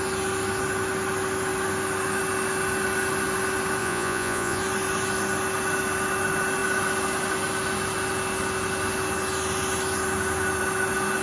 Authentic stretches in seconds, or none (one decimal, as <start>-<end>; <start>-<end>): 0.0-3.8; 4.6-11.2